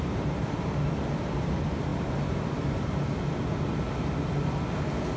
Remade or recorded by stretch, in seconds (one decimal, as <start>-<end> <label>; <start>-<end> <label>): 0.0-5.2 recorded